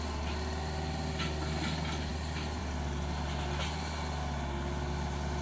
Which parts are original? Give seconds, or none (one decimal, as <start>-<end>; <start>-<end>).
0.0-5.4